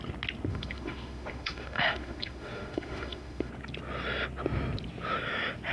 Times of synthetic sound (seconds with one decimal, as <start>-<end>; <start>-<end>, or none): 0.5-3.5